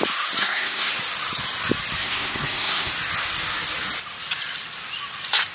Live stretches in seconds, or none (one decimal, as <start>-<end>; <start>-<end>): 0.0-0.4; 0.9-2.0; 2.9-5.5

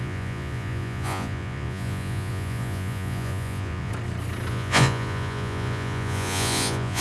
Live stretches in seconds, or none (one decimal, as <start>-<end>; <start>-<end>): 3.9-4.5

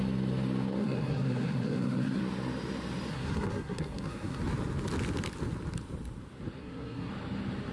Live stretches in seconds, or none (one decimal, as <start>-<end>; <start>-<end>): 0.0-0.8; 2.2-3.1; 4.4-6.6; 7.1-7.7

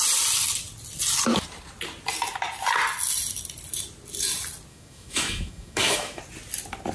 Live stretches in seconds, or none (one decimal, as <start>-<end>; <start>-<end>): 0.0-4.7; 6.2-6.9